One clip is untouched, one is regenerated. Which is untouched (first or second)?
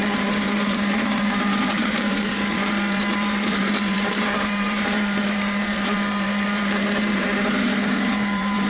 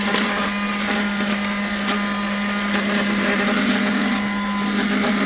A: second